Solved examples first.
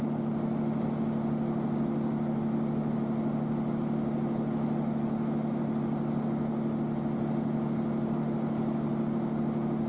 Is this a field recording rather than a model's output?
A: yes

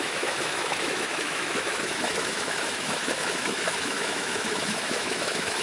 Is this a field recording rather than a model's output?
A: no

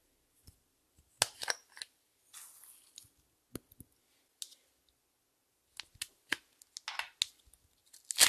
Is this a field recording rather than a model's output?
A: yes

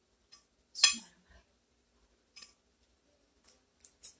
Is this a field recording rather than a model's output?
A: yes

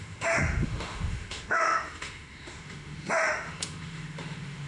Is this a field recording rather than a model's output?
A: no